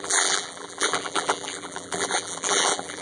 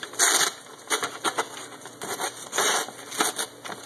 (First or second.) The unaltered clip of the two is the second